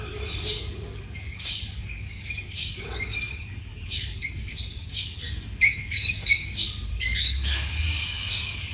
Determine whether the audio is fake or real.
fake